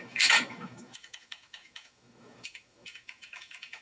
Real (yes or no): no